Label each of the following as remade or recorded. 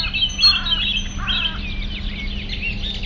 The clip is recorded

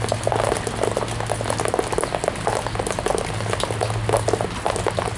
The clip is recorded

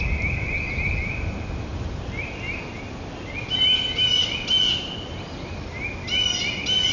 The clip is recorded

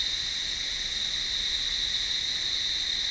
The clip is recorded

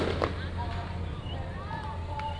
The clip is recorded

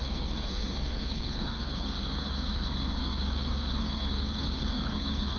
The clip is remade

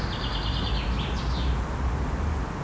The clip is recorded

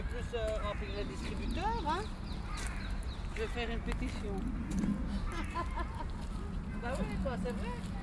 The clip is recorded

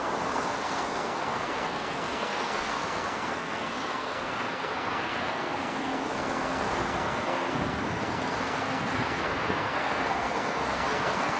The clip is remade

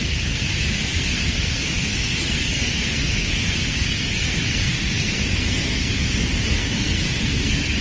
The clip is remade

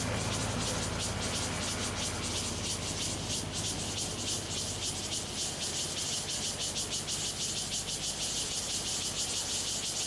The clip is recorded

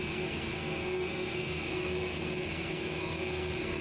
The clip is remade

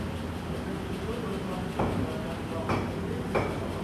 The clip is recorded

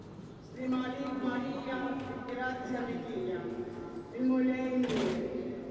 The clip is recorded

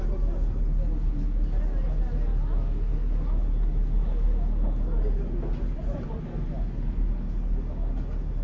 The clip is recorded